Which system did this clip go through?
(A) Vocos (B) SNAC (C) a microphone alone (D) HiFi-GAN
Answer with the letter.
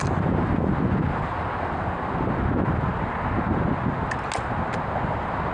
C